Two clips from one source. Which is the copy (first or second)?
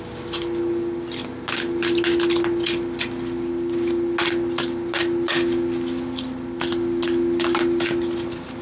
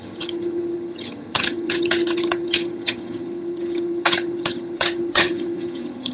second